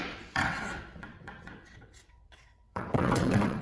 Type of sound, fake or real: fake